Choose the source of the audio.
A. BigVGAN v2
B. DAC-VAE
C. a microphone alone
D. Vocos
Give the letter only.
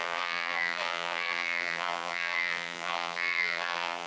A